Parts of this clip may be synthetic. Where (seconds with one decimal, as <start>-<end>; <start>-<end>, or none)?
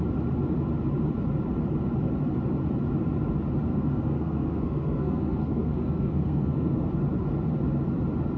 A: 3.7-6.9